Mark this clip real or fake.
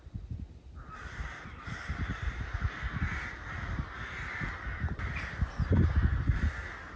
real